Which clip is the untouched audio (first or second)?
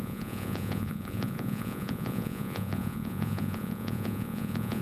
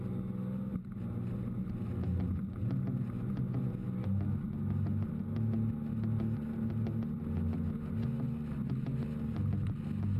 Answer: second